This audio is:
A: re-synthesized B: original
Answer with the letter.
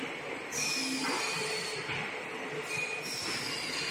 B